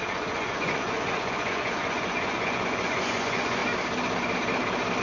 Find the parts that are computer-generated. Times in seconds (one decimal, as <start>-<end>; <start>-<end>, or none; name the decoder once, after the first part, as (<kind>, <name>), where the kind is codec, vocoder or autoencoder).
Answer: 0.0-3.6 (vocoder, Vocos)